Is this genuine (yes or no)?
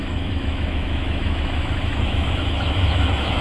no